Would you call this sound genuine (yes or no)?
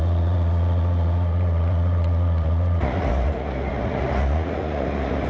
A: no